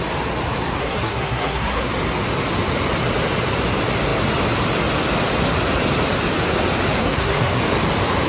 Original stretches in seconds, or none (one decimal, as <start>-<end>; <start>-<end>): 0.0-0.8; 1.9-7.0; 7.6-8.3